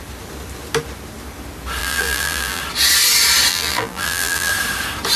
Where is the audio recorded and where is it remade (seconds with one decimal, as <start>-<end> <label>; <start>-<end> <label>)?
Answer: 0.0-1.8 recorded; 1.8-2.6 remade; 2.6-3.5 recorded; 3.5-4.5 remade; 4.5-5.2 recorded